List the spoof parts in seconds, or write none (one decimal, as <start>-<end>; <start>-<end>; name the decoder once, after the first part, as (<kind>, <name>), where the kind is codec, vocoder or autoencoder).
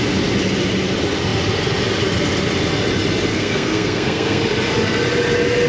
3.3-4.4 (codec, SNAC)